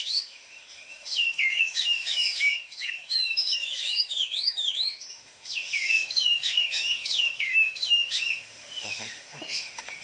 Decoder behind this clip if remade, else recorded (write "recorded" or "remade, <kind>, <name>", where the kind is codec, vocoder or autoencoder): remade, autoencoder, DAC-VAE